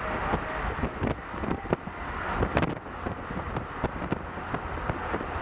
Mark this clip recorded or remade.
recorded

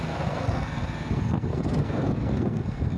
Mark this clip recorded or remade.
remade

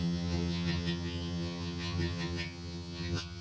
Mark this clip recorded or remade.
remade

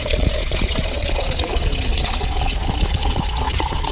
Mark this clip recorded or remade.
remade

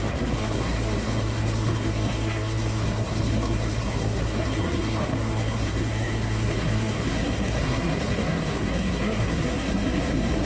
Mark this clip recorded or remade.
remade